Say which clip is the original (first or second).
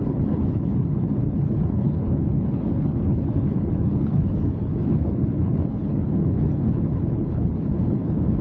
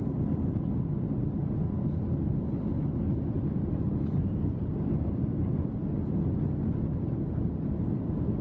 second